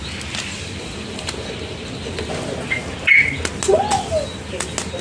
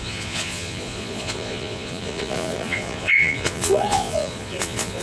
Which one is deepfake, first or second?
second